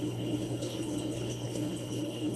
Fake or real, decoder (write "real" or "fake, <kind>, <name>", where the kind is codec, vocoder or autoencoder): fake, codec, HILCodec